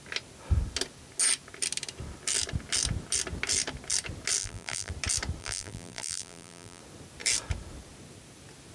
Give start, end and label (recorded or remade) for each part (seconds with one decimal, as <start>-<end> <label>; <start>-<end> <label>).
0.0-4.4 recorded; 4.4-4.9 remade; 4.9-5.4 recorded; 5.4-6.8 remade; 6.8-8.7 recorded

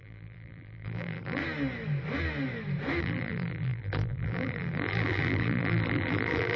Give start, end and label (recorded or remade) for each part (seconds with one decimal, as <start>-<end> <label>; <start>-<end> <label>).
0.0-1.4 remade; 1.4-3.0 recorded; 3.0-6.6 remade

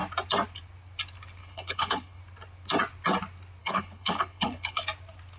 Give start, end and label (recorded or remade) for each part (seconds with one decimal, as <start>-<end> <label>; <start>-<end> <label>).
0.0-1.4 recorded; 1.4-2.2 remade; 2.2-3.6 recorded; 3.6-4.8 remade; 4.8-5.4 recorded

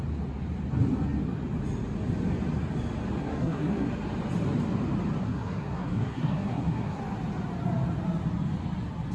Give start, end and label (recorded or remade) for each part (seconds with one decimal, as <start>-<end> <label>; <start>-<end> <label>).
0.0-3.2 recorded; 3.2-3.9 remade; 3.9-5.2 recorded; 5.2-7.0 remade; 7.0-9.1 recorded

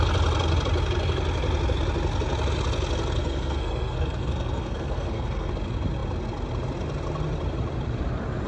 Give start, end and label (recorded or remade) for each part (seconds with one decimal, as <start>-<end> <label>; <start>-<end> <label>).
0.0-3.2 recorded; 3.2-5.5 remade; 5.5-8.5 recorded

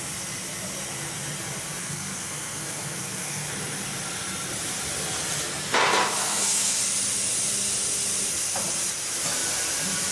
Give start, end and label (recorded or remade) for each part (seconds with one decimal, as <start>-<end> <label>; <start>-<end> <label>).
0.0-1.8 recorded; 1.8-3.5 remade; 3.5-6.2 recorded; 6.2-6.8 remade; 6.8-10.1 recorded

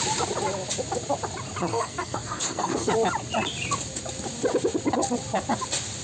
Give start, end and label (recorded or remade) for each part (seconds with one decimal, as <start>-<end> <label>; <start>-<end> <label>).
0.0-1.7 recorded; 1.7-2.9 remade; 2.9-6.0 recorded